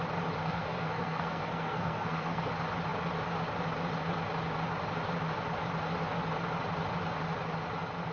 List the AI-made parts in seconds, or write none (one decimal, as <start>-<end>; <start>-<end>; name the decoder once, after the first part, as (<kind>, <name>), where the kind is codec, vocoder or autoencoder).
0.4-2.5 (codec, SNAC)